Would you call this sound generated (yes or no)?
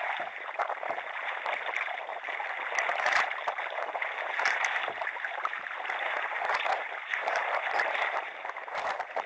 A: yes